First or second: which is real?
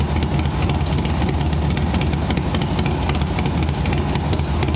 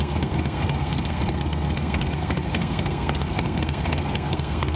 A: first